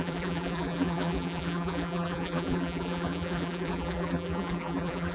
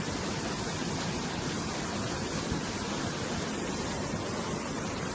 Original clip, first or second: second